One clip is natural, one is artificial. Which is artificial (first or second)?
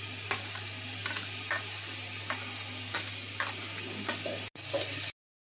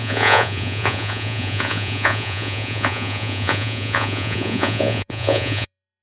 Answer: second